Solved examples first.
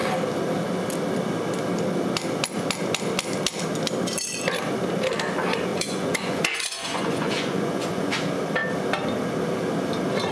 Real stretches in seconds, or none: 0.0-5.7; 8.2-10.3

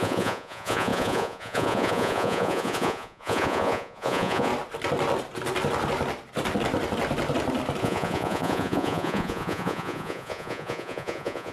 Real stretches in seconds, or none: 4.5-7.8

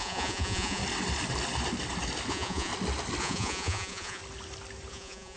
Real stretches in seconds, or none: 0.8-2.3; 2.7-3.2; 4.2-4.9

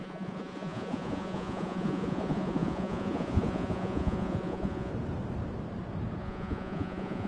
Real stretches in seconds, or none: 4.9-6.2

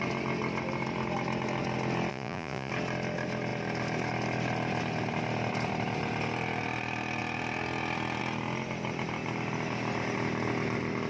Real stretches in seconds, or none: 0.0-2.1; 2.7-11.1

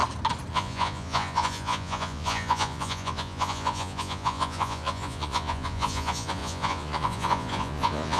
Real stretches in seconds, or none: 0.0-0.5

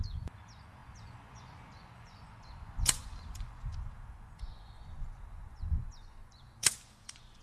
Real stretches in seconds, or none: none